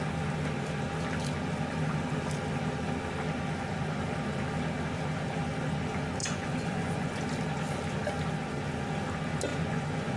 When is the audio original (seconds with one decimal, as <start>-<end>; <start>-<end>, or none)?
0.0-6.2; 7.2-9.5